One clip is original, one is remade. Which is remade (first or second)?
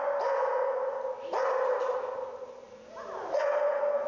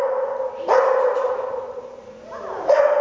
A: second